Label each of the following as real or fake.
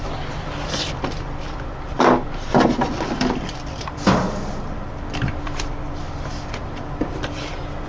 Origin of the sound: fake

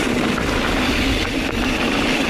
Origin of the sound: real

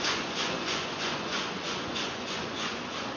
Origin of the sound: fake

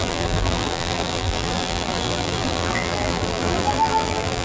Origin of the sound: fake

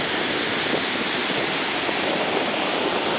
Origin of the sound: real